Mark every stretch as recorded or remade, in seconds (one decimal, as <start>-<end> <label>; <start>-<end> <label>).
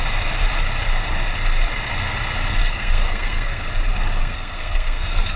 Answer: 0.0-2.6 recorded; 2.6-3.7 remade; 3.7-4.2 recorded; 4.2-5.4 remade